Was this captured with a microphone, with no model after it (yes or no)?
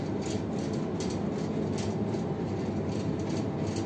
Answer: yes